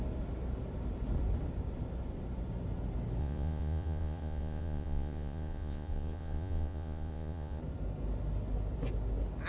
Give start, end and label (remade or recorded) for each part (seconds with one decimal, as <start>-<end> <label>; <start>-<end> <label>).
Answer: 0.0-3.2 recorded; 3.2-7.6 remade; 7.6-9.5 recorded